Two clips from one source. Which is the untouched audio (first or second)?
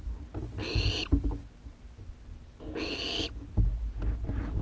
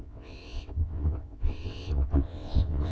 first